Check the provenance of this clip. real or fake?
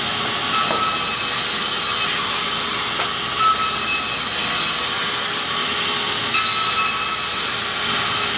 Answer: real